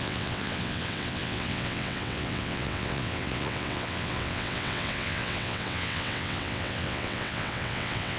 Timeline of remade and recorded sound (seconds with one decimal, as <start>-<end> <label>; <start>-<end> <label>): 0.0-8.2 remade